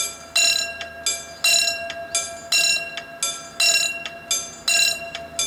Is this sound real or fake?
real